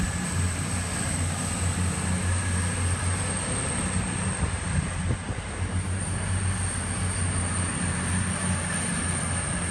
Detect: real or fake real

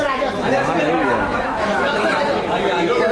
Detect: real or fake fake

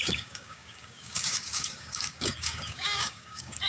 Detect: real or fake fake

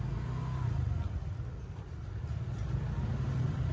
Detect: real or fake real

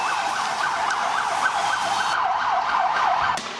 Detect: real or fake real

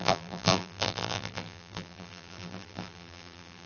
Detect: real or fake fake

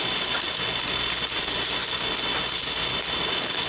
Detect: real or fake real